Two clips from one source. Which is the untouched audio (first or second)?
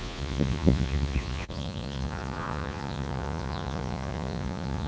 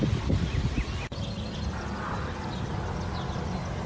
second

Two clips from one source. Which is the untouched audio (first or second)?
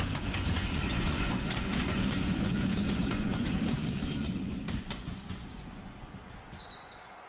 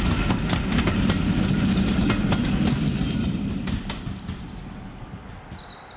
second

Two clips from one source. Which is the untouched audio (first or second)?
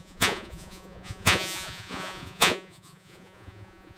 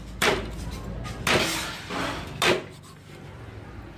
second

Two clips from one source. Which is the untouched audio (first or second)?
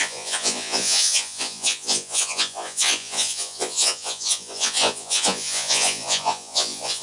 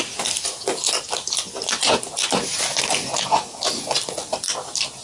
second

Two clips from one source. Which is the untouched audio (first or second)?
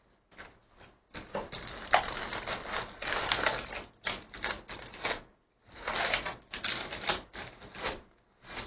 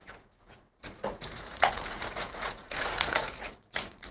first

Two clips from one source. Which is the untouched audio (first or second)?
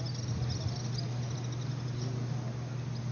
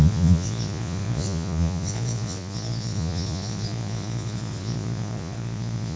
first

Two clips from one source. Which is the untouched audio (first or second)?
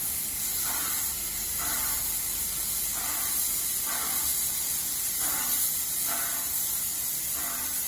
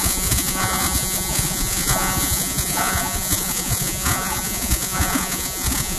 first